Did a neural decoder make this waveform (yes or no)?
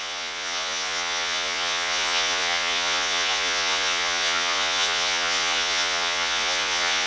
yes